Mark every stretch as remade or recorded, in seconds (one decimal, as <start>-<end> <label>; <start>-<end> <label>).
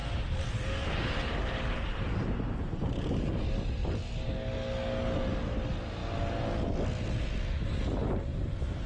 0.0-3.3 remade; 3.3-8.3 recorded; 8.3-8.9 remade